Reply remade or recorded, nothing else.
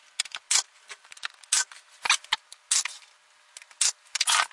recorded